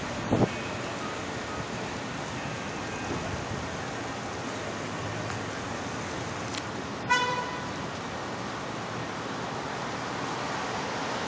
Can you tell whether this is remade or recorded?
recorded